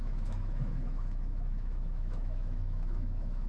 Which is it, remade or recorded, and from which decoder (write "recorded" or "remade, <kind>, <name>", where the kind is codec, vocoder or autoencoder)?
remade, autoencoder, DAC-VAE